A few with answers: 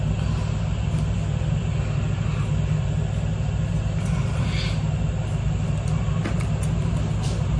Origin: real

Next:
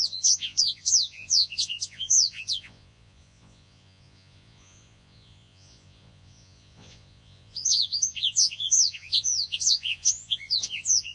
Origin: fake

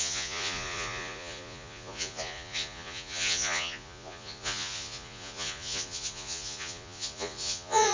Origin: fake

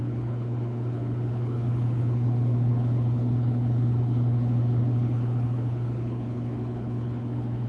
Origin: fake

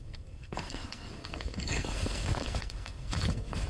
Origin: fake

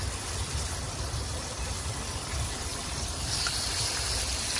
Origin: real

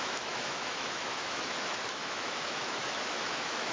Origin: fake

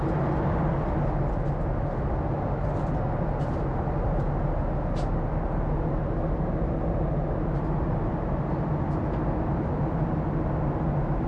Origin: real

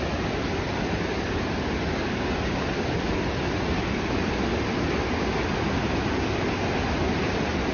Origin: real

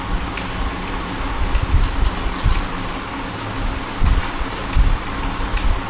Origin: real